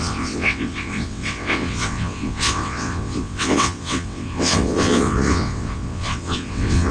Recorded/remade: remade